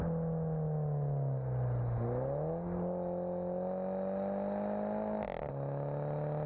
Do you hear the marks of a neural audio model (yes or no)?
no